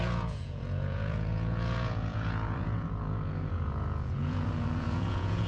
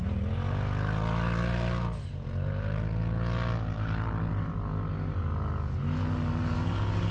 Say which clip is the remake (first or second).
first